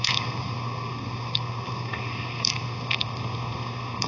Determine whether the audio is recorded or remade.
remade